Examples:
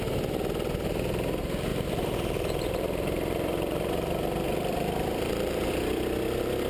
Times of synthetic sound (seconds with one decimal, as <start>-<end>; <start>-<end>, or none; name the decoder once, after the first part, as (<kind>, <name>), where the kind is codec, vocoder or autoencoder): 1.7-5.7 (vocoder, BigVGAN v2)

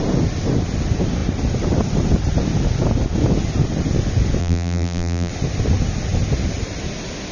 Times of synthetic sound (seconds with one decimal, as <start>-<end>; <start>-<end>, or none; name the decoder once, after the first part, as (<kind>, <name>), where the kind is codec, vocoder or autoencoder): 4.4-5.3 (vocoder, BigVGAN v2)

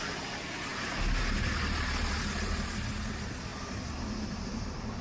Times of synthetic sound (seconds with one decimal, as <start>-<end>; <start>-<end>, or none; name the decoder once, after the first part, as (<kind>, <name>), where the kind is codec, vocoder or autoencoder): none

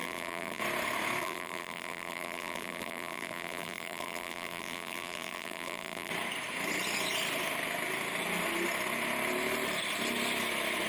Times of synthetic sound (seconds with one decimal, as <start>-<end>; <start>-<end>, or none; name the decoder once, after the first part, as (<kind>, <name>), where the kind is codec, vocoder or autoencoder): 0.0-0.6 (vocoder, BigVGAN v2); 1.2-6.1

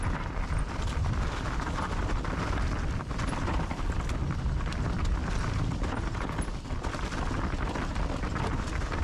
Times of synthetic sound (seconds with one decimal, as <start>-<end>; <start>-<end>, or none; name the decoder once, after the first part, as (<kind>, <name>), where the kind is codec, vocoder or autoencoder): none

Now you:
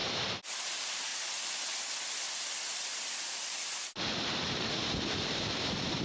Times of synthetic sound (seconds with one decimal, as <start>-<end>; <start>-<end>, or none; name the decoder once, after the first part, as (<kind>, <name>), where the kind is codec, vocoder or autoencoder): 0.5-1.1 (vocoder, BigVGAN v2); 4.7-6.0

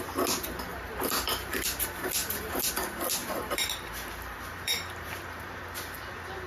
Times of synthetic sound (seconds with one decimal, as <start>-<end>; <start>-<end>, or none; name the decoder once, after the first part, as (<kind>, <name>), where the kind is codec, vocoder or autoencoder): 0.7-1.3 (vocoder, BigVGAN v2); 2.2-2.7; 3.2-5.6

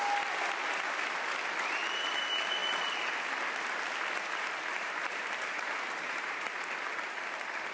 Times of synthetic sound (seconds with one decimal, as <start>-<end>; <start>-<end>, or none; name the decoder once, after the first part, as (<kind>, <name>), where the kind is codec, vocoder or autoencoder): 4.7-6.8 (vocoder, BigVGAN v2)